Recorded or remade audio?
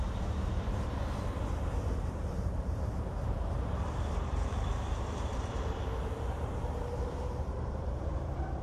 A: remade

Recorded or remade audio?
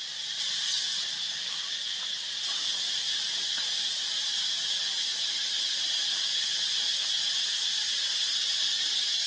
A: recorded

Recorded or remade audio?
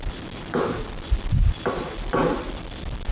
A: recorded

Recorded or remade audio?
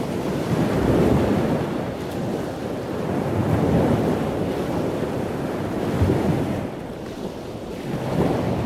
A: recorded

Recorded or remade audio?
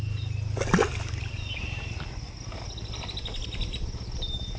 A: recorded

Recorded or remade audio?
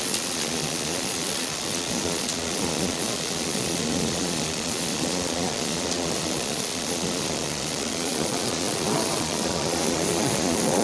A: remade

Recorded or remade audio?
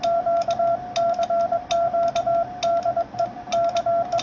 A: recorded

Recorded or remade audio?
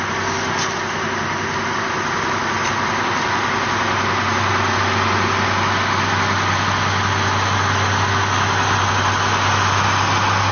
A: recorded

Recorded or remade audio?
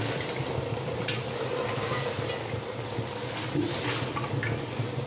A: recorded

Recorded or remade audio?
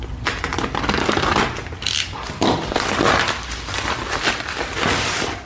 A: remade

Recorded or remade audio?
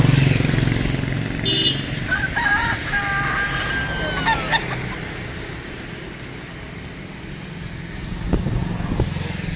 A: recorded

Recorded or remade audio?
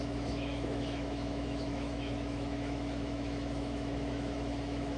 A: remade